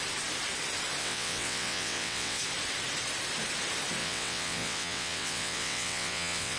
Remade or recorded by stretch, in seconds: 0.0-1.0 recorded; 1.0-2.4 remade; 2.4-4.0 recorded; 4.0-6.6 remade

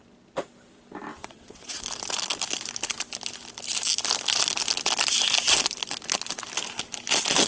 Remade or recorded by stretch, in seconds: 0.0-1.1 recorded; 1.1-1.8 remade; 1.8-7.5 recorded

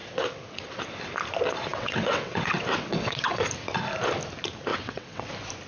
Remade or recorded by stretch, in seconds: 0.0-0.8 remade; 0.8-1.7 recorded; 1.7-3.4 remade; 3.4-4.7 recorded; 4.7-5.3 remade; 5.3-5.7 recorded

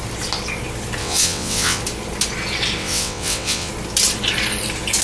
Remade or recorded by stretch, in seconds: 0.0-1.0 recorded; 1.0-1.8 remade; 1.8-2.8 recorded; 2.8-3.7 remade; 3.7-5.0 recorded

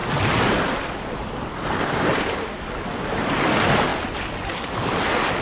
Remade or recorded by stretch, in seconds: 0.0-5.4 recorded

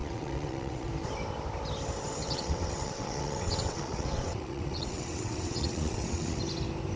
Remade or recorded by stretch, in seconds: 0.0-0.9 remade; 0.9-2.2 recorded; 2.2-6.4 remade; 6.4-7.0 recorded

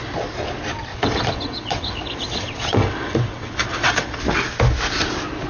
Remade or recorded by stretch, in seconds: 0.0-0.9 recorded; 0.9-4.2 remade; 4.2-5.5 recorded